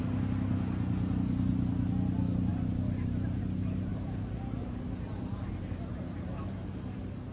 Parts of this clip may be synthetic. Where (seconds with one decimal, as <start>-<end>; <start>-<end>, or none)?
2.5-3.4; 3.9-6.7